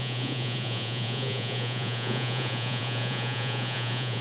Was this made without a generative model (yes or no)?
no